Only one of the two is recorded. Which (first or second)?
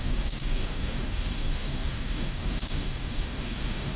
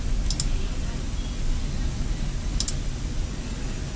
second